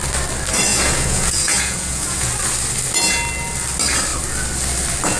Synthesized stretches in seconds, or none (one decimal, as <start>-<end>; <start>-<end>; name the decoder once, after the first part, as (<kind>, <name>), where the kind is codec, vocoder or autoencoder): 0.7-2.3 (vocoder, Vocos)